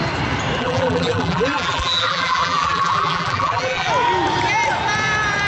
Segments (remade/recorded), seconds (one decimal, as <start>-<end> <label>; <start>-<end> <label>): 0.0-0.6 recorded; 0.6-3.9 remade; 3.9-5.5 recorded